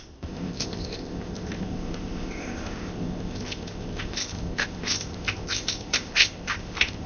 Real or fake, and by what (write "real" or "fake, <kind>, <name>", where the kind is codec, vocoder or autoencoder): fake, codec, ZipCodec